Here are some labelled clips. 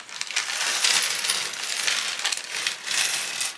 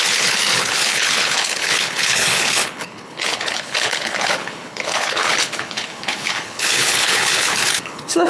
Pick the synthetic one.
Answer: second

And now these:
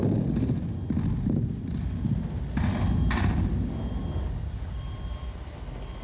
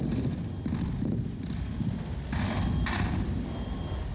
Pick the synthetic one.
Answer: second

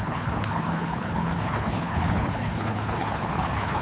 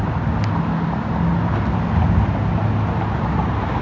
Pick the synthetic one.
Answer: first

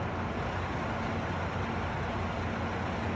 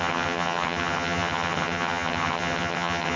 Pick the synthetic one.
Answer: second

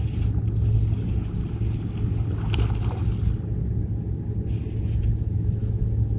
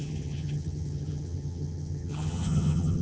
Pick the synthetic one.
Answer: second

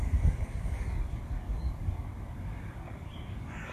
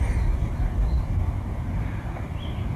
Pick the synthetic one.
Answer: first